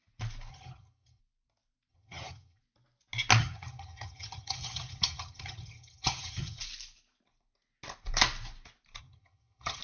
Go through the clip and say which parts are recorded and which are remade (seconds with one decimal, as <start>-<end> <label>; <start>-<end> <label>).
0.0-0.5 recorded; 0.5-1.2 remade; 1.2-1.9 recorded; 1.9-2.6 remade; 2.6-3.4 recorded; 3.4-6.6 remade; 6.6-9.0 recorded; 9.0-9.8 remade